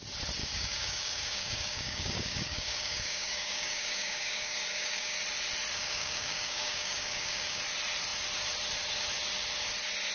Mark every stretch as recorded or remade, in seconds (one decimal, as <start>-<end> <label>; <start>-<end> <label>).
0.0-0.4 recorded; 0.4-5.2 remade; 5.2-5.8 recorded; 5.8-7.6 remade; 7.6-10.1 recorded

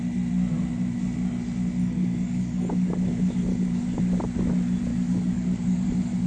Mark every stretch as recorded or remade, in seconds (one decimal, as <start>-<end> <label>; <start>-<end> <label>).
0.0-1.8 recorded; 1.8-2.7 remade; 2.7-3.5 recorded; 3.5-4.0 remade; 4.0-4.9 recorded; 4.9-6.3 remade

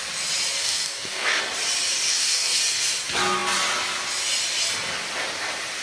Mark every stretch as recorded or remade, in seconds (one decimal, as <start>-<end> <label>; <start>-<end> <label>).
0.0-0.6 recorded; 0.6-1.4 remade; 1.4-2.1 recorded; 2.1-2.6 remade; 2.6-5.8 recorded

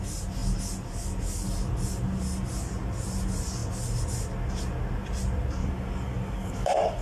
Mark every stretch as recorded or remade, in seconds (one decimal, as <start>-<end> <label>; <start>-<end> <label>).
0.0-5.6 recorded; 5.6-7.0 remade

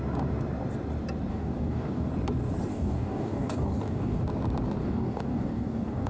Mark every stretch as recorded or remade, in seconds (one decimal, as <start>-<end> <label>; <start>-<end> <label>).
0.0-1.3 recorded; 1.3-2.1 remade; 2.1-2.7 recorded; 2.7-4.2 remade; 4.2-4.8 recorded; 4.8-6.1 remade

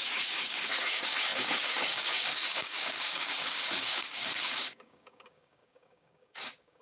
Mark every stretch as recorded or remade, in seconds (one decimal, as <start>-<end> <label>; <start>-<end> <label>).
0.0-6.8 remade